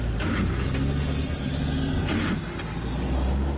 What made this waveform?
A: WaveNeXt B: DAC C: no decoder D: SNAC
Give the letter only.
C